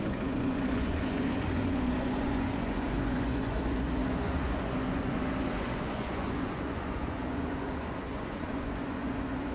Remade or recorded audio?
remade